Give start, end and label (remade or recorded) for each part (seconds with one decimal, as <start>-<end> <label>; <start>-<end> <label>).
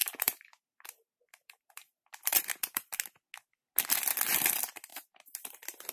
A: 0.0-2.9 remade; 2.9-5.9 recorded